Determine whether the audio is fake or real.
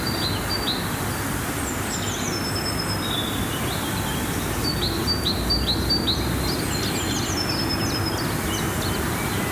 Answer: real